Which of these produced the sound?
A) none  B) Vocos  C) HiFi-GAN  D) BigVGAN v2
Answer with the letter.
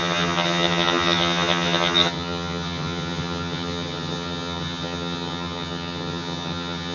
C